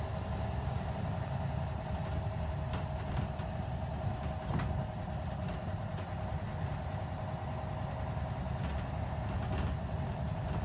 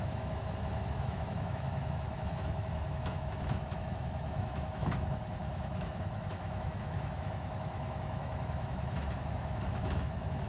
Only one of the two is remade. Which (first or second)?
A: second